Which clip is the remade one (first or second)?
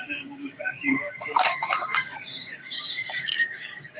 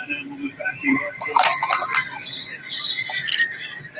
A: first